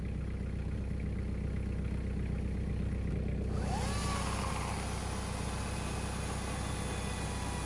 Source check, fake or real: real